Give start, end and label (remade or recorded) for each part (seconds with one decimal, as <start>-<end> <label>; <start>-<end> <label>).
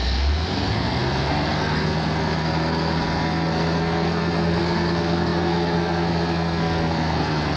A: 0.0-7.6 remade